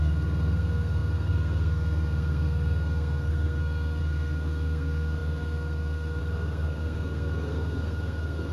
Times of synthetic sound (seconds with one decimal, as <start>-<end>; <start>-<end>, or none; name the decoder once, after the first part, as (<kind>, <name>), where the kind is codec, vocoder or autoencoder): 0.0-8.5 (codec, SNAC)